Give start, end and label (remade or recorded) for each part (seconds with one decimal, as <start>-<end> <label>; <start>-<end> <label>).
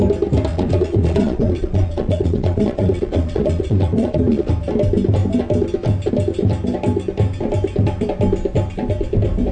0.0-0.5 recorded; 0.5-4.5 remade; 4.5-9.5 recorded